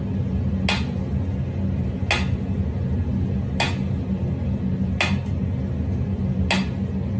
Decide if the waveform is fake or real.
real